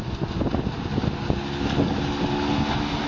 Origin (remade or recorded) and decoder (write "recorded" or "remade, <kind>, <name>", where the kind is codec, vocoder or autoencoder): recorded